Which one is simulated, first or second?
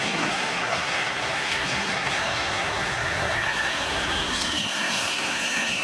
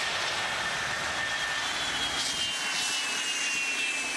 first